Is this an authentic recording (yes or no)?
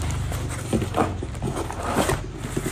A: yes